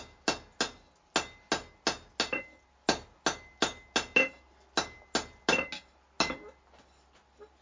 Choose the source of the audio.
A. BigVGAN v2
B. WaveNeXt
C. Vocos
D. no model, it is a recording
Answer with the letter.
D